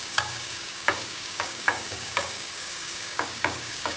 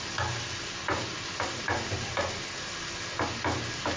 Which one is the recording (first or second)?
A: second